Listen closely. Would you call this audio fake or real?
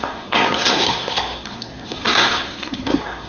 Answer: fake